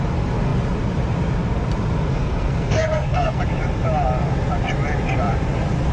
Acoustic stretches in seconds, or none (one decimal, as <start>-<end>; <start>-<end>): 0.0-2.1; 3.4-5.9